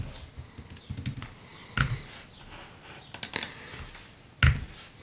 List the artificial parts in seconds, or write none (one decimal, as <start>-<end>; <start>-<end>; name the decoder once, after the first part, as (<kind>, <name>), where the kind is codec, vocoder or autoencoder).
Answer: 1.5-3.7 (vocoder, BigVGAN v2)